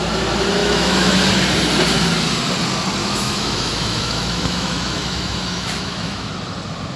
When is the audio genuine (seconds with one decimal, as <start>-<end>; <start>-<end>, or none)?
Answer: 0.0-0.6; 1.2-3.0; 6.3-7.0